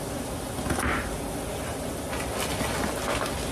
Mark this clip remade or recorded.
recorded